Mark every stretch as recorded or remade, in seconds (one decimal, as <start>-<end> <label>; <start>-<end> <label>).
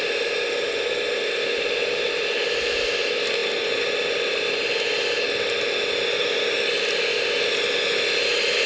0.0-8.7 recorded